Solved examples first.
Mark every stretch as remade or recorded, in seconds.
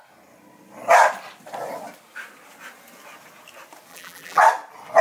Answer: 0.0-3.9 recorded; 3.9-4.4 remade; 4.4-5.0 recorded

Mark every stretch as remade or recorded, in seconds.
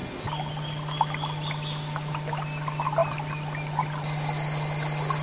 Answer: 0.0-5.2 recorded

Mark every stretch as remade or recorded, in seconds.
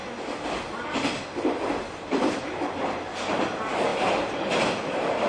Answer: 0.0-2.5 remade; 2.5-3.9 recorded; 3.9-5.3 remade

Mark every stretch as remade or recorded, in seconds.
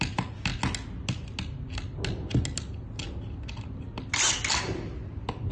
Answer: 0.0-5.5 recorded